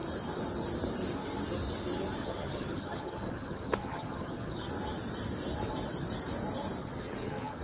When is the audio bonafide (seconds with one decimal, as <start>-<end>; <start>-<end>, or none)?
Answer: 0.0-2.2; 4.7-6.8

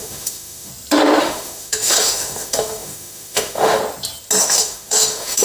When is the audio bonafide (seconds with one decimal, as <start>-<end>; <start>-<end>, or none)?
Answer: 0.7-1.2; 3.8-4.4